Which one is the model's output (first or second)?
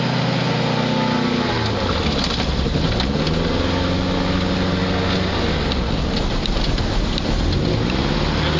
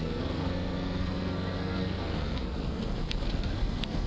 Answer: second